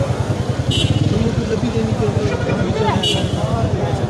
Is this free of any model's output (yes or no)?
no